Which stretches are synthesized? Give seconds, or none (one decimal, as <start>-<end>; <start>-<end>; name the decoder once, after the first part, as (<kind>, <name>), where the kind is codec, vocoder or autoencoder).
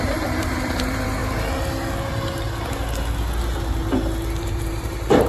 0.0-1.2 (vocoder, BigVGAN v2); 4.4-5.3